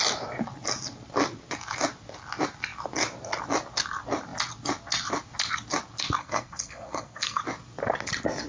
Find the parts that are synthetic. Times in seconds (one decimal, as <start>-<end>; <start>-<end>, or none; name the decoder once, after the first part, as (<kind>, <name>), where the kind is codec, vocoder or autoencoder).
6.2-7.4 (codec, SNAC)

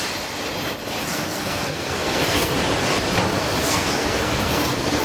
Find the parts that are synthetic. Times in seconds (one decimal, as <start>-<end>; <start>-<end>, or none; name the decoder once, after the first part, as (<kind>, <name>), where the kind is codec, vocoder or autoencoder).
1.1-2.5 (codec, SNAC); 3.3-5.0

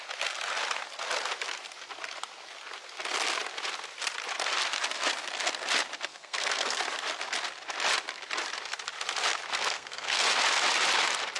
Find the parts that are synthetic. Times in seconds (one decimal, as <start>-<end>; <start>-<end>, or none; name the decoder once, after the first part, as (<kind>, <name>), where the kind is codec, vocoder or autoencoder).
6.1-6.8 (codec, SNAC); 9.5-10.2

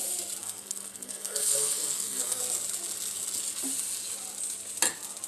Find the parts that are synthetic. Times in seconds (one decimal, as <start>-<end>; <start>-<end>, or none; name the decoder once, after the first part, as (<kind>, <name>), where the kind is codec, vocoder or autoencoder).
0.4-2.4 (codec, SNAC)

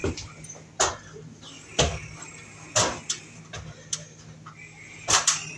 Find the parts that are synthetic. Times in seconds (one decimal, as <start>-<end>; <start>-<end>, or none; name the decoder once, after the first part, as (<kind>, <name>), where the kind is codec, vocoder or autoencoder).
none

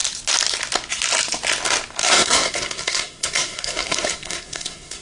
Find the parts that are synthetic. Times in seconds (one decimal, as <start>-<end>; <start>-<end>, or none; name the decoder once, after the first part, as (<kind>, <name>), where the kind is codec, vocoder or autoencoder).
2.0-5.0 (codec, SNAC)

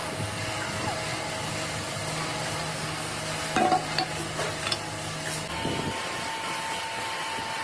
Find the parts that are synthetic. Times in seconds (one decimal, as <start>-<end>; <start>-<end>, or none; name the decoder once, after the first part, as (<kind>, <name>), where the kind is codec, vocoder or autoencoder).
2.7-3.2 (codec, SNAC)